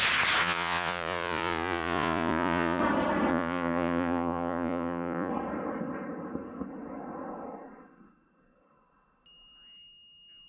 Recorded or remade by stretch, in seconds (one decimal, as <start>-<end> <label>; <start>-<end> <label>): 0.0-0.4 recorded; 0.4-2.8 remade; 2.8-3.3 recorded; 3.3-5.3 remade; 5.3-10.5 recorded